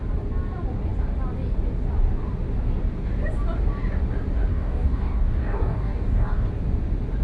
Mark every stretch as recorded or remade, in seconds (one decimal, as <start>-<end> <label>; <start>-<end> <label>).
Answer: 0.0-4.5 recorded; 4.5-6.5 remade; 6.5-7.2 recorded